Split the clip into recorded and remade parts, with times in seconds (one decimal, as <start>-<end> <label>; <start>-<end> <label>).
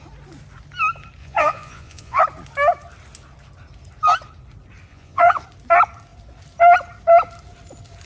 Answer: 0.0-1.2 recorded; 1.2-2.2 remade; 2.2-4.9 recorded; 4.9-5.4 remade; 5.4-8.1 recorded